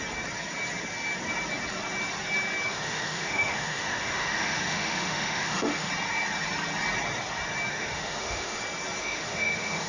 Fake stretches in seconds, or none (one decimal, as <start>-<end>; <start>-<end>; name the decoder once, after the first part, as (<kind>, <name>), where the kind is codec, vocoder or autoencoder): 2.7-5.9 (autoencoder, DAC-VAE); 7.7-8.6; 9.0-9.9